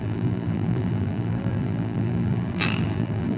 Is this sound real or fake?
fake